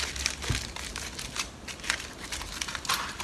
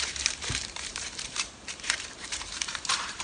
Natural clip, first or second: first